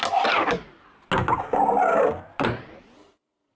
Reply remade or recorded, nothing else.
recorded